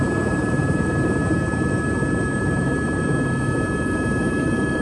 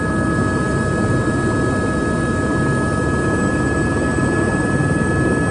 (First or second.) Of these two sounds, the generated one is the first